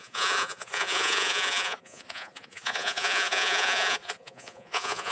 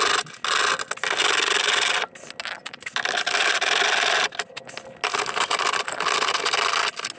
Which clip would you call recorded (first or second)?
second